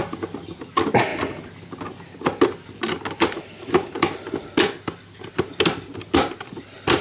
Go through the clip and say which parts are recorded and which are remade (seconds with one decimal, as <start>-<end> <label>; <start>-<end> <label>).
0.0-7.0 recorded